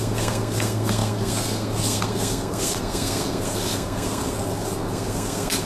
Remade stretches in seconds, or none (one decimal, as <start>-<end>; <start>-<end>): 0.0-5.7